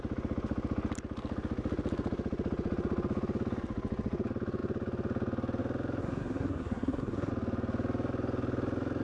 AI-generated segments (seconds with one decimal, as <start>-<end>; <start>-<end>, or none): 6.0-7.3